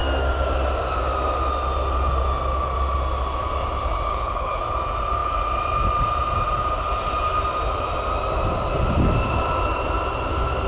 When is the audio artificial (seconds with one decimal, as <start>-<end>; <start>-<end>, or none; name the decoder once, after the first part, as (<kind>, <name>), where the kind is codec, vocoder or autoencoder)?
4.1-4.6 (codec, HILCodec)